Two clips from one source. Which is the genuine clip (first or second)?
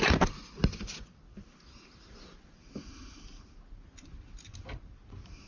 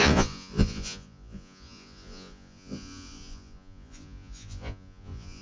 first